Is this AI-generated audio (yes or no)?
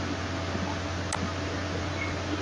no